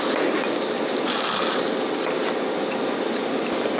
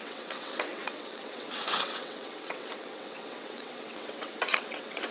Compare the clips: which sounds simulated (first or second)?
second